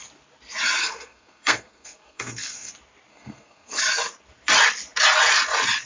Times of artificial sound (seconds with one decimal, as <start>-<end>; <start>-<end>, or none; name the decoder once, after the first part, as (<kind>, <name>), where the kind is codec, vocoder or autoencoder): 0.8-2.7 (codec, SNAC); 3.1-3.8